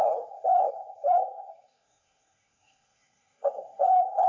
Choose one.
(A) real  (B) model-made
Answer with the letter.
B